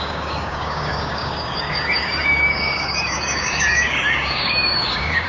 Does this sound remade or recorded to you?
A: remade